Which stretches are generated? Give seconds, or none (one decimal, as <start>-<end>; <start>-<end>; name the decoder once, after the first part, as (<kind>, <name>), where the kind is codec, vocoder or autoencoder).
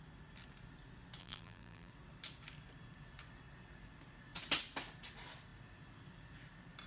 1.2-1.9 (vocoder, BigVGAN v2)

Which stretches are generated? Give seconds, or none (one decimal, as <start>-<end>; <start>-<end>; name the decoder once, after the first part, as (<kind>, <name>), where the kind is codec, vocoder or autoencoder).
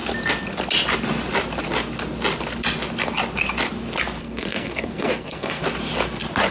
4.2-5.6 (codec, SNAC)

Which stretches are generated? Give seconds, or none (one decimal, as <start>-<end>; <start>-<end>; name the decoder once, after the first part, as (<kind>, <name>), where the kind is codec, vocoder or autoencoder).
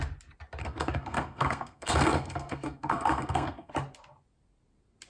0.6-3.7 (codec, SNAC)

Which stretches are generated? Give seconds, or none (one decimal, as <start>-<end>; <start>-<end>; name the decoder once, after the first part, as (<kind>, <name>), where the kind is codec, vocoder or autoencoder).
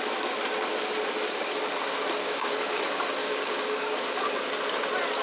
2.2-2.8 (codec, DAC); 3.2-4.1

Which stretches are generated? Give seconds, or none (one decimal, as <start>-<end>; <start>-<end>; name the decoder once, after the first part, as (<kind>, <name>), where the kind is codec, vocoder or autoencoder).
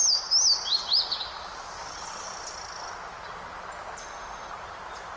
4.0-4.5 (autoencoder, DAC-VAE)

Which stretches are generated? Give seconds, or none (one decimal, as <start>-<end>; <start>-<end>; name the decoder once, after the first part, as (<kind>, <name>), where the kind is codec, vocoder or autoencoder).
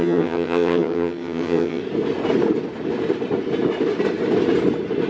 0.0-1.8 (vocoder, HiFi-GAN)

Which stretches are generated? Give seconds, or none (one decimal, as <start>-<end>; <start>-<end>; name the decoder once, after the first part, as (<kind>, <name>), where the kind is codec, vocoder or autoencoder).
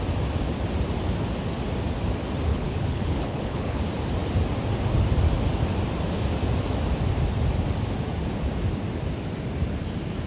2.5-3.8 (codec, HILCodec)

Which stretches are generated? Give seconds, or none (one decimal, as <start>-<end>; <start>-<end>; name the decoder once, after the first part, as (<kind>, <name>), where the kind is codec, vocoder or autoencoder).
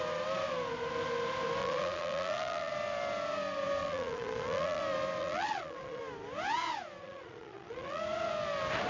1.6-2.7 (vocoder, Vocos); 3.8-4.8; 5.2-6.0; 7.0-8.0